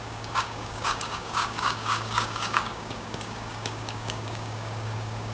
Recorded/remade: remade